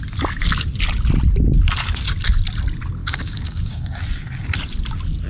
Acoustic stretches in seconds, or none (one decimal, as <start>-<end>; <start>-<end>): 0.0-3.0; 4.0-5.3